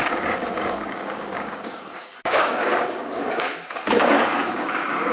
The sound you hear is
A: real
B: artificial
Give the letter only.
B